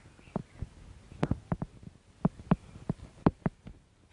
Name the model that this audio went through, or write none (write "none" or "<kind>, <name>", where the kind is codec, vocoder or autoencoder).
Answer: none